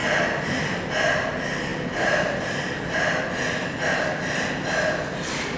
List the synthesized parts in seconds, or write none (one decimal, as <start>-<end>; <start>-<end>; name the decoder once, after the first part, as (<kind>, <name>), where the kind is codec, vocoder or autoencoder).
1.7-3.2 (vocoder, BigVGAN v2)